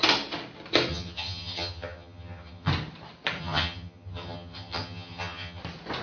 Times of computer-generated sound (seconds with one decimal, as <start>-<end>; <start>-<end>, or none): 0.9-2.7; 3.4-5.6